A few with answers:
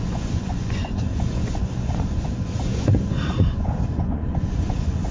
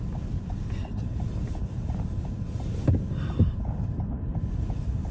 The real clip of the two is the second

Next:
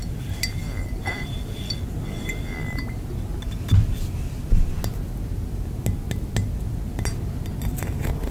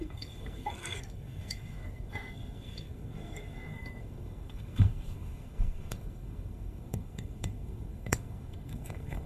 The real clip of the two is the first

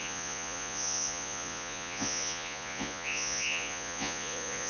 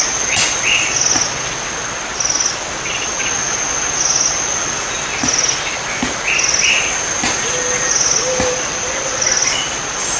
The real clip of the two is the second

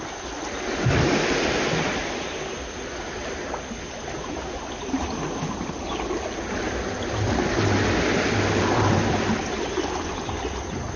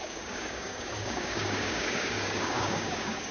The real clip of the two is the first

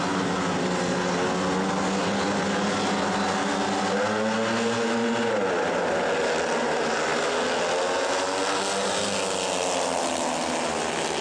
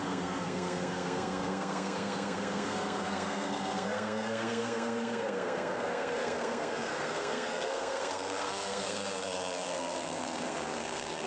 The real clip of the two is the first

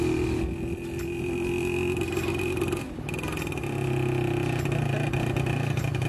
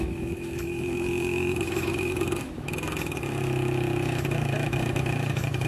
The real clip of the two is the first